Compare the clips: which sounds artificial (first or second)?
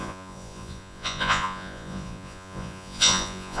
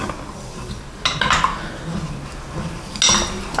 first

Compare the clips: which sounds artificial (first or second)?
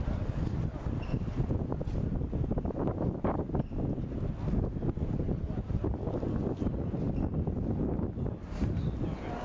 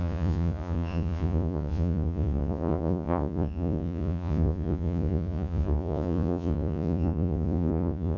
second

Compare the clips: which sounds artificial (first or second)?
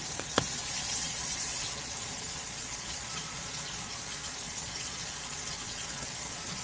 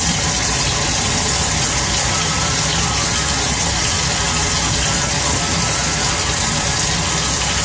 first